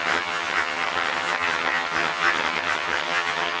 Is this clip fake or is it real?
fake